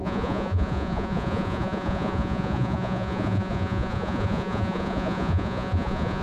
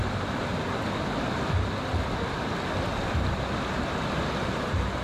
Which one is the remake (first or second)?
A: first